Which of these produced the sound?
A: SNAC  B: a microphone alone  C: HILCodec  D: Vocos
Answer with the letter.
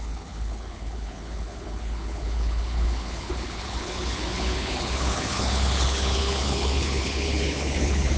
C